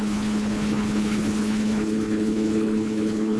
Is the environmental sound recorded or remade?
remade